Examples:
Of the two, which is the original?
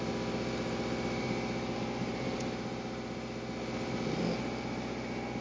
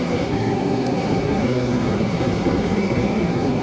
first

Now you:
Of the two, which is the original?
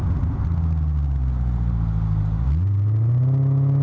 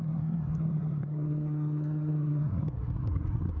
first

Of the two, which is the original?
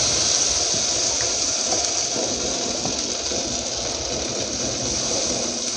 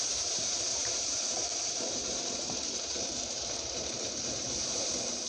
first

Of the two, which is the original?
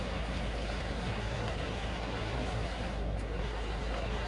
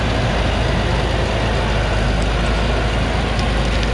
second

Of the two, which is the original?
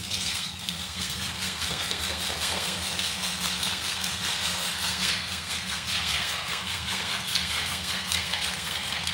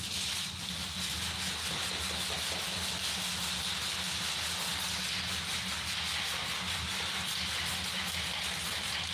second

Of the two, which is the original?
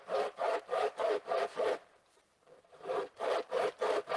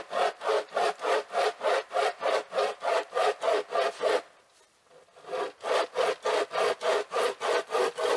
second